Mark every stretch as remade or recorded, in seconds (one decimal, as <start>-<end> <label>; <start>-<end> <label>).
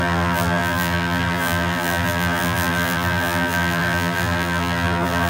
0.0-5.3 remade